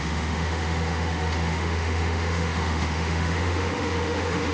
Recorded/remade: remade